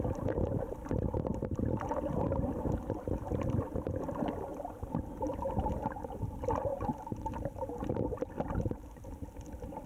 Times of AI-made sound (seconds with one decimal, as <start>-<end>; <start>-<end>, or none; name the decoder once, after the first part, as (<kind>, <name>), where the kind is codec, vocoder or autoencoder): 0.0-6.7 (vocoder, BigVGAN v2); 7.8-9.9